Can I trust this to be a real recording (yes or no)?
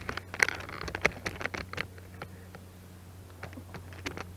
yes